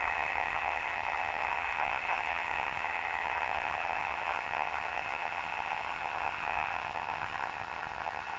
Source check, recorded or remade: remade